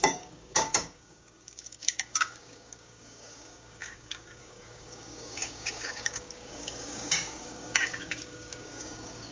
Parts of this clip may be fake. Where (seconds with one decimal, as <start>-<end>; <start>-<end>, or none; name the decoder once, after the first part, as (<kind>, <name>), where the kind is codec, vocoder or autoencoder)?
0.0-9.3 (codec, DAC)